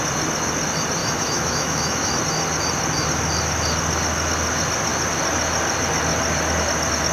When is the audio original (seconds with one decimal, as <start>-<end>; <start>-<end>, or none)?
0.0-1.0; 2.2-7.1